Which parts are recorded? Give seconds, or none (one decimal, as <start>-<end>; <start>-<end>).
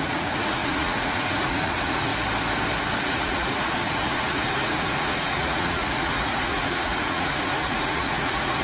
2.1-3.0